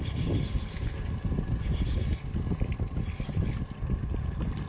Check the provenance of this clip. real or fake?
real